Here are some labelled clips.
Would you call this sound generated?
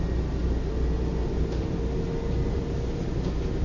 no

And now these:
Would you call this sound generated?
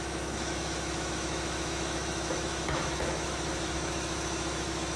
yes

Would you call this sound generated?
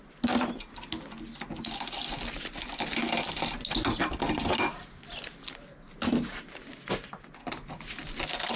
no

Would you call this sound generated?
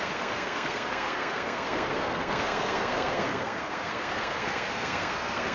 yes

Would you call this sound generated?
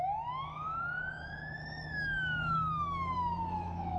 yes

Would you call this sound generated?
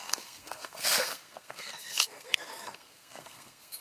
yes